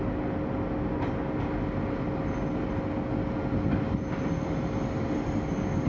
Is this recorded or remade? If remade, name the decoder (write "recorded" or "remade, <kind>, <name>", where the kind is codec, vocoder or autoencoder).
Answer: recorded